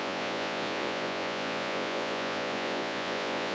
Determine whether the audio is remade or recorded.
remade